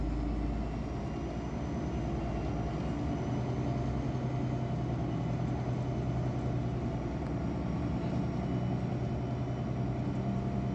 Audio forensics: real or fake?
real